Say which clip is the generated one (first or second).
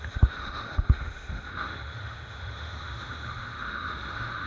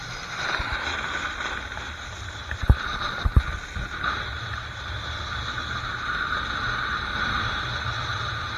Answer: first